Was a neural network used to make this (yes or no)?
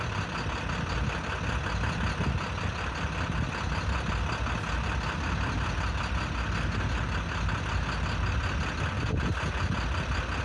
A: no